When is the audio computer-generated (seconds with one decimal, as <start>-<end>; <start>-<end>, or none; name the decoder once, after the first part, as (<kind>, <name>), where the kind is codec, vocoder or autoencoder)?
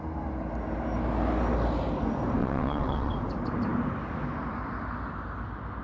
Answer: 2.4-3.1 (vocoder, WaveNeXt)